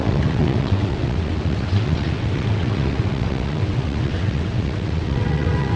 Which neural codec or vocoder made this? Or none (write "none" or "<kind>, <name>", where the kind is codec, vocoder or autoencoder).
vocoder, WaveNeXt